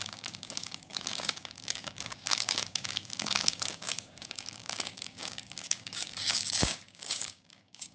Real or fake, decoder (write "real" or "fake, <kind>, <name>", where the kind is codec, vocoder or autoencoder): fake, codec, DAC